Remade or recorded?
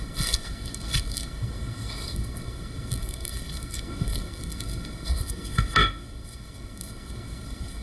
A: remade